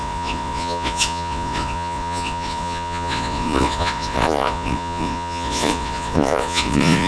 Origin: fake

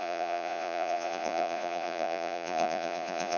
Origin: fake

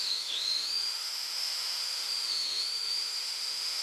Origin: fake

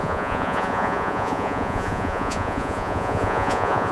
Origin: fake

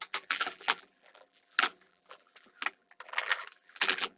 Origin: fake